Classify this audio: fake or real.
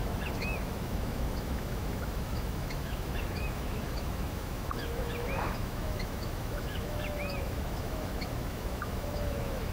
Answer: fake